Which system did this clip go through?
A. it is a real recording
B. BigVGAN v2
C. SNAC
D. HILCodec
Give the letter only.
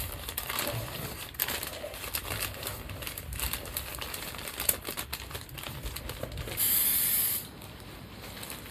B